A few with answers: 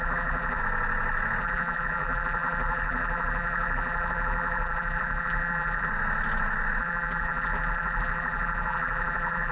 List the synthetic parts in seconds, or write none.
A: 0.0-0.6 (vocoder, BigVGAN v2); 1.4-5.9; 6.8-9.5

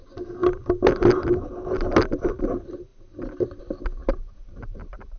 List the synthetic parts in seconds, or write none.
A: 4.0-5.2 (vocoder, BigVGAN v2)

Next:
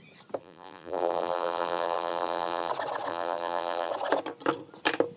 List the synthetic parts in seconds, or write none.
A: 0.4-2.7 (vocoder, BigVGAN v2); 3.1-3.9

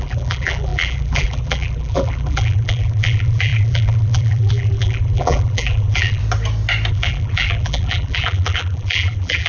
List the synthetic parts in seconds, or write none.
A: 0.0-6.2 (vocoder, BigVGAN v2); 6.9-9.5